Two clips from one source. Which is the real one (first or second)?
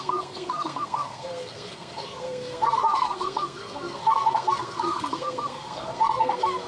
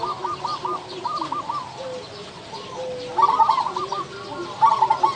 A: second